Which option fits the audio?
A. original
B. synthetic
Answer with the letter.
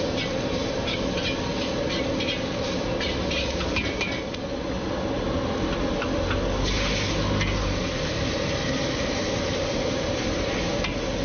A